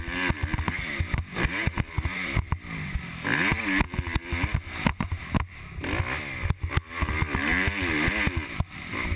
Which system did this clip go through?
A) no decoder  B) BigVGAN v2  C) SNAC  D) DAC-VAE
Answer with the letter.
A